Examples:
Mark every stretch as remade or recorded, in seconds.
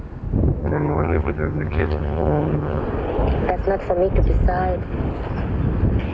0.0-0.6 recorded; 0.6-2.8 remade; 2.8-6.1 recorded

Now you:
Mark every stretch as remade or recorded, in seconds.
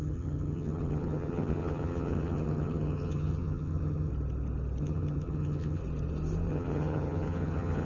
0.0-4.1 remade; 4.1-4.8 recorded; 4.8-5.8 remade; 5.8-6.5 recorded; 6.5-7.8 remade